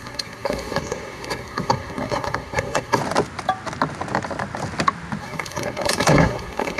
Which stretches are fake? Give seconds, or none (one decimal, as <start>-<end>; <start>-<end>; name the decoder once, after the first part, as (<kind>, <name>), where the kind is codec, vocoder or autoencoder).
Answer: 0.0-3.0 (codec, SNAC); 5.2-6.8